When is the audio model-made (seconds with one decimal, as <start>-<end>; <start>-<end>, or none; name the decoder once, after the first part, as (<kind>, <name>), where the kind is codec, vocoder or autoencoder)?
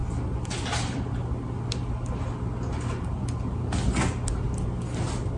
none